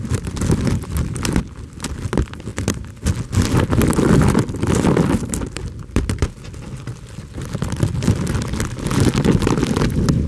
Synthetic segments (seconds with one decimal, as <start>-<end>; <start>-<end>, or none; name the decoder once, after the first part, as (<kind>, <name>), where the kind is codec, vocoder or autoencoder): 0.0-2.5 (vocoder, BigVGAN v2); 5.2-6.2; 6.9-10.3